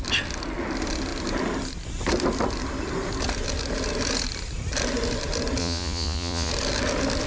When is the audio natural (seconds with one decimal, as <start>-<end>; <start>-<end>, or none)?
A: 0.0-5.6; 6.5-7.3